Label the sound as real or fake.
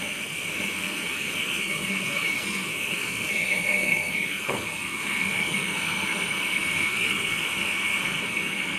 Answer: fake